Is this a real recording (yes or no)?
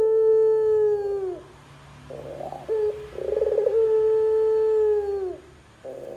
yes